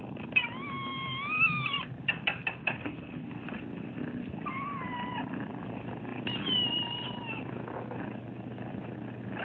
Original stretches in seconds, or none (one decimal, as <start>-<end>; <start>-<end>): 0.0-2.6; 3.3-9.4